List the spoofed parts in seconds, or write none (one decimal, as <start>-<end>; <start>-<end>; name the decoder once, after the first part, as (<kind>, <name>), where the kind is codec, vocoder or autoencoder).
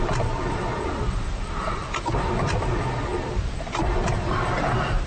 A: 0.0-5.1 (vocoder, BigVGAN v2)